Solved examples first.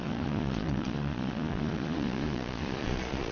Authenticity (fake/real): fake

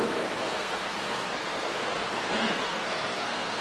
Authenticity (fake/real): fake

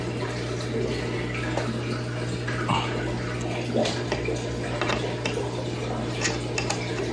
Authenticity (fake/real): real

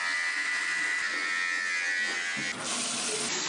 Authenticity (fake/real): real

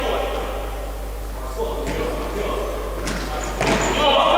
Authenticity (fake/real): real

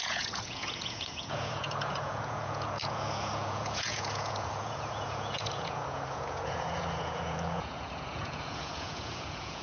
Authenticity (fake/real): fake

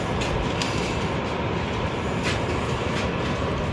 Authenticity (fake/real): real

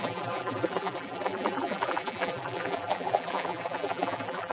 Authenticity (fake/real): fake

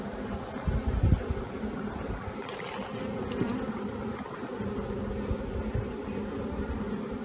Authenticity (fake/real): real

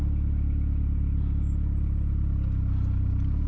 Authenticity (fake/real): real